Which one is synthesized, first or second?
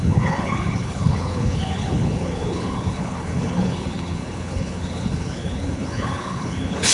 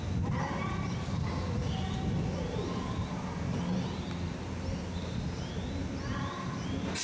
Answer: first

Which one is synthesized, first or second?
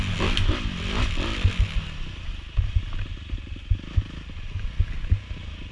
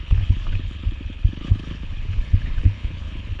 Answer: second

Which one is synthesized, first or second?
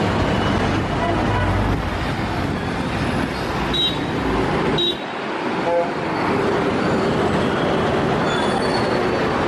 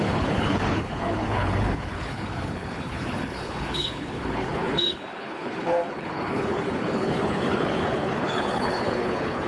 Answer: second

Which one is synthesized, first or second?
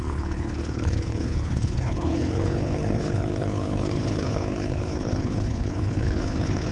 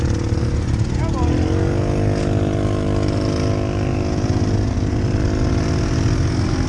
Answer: first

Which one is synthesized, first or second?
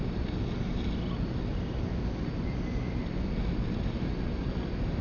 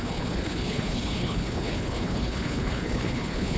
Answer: second